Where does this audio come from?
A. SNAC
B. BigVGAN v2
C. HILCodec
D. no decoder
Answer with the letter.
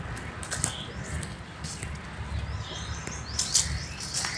D